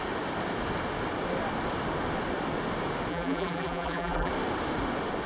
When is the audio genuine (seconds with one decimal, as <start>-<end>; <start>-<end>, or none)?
0.0-3.1; 4.3-5.3